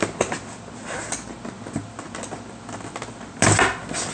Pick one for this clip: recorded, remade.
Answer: recorded